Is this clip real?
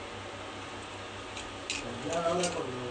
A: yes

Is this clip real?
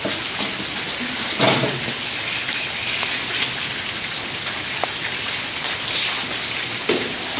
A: yes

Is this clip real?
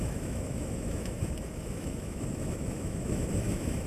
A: no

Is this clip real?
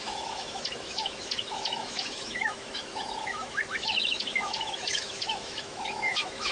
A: no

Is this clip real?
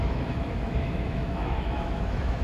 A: no